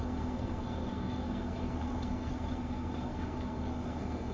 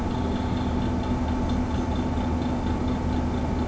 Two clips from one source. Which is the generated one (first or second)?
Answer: first